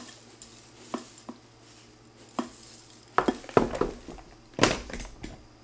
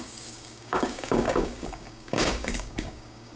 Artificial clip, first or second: second